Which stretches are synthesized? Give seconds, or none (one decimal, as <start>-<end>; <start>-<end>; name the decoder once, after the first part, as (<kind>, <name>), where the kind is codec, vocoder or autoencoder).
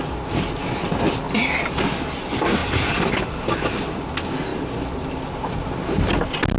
2.6-4.0 (vocoder, BigVGAN v2); 4.5-5.2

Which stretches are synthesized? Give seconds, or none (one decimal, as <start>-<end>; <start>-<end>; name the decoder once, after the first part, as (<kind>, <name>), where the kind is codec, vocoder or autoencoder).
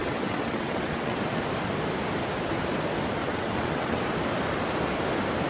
0.0-1.2 (vocoder, WaveNeXt); 3.2-4.0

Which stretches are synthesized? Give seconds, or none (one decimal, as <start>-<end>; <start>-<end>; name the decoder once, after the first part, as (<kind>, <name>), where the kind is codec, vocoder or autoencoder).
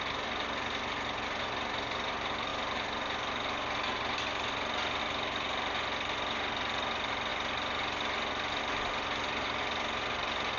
none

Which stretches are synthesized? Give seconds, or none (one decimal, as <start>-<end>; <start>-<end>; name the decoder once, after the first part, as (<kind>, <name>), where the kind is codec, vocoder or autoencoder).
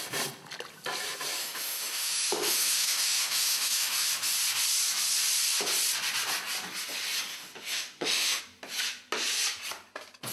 1.4-4.1 (autoencoder, DAC-VAE); 7.3-8.4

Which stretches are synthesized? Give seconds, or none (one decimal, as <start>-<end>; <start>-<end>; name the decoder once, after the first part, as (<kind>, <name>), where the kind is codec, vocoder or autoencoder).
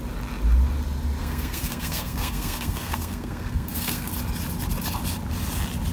1.2-4.1 (codec, SNAC)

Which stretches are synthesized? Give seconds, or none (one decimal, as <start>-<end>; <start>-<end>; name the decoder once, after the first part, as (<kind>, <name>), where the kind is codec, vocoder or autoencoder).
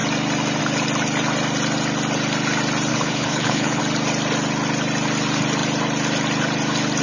2.9-3.8 (codec, HILCodec)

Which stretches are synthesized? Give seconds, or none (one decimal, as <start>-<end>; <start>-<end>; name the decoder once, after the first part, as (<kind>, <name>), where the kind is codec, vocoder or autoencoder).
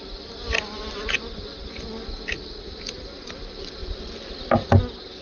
none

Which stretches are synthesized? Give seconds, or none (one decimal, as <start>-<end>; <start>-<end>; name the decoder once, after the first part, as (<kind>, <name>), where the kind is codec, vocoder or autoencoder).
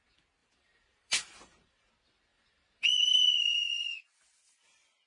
0.4-1.9 (vocoder, BigVGAN v2); 2.3-3.2